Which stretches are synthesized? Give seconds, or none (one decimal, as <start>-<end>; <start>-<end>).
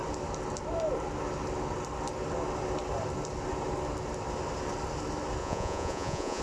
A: 5.4-6.4